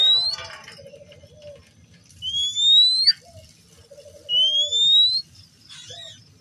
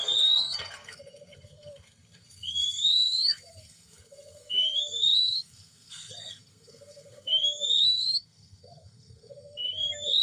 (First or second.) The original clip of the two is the first